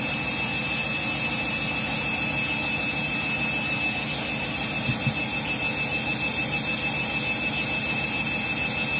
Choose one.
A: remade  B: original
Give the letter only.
B